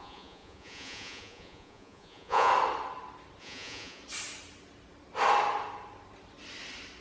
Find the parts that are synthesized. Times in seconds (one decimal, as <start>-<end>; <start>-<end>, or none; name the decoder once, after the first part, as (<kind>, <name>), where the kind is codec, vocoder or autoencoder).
0.0-2.5 (vocoder, Vocos); 3.4-4.0